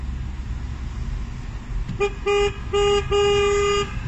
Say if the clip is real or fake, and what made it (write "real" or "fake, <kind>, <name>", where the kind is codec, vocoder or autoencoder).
real